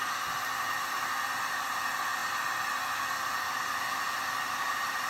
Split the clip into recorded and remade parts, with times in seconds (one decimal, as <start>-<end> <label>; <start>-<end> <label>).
0.0-5.1 recorded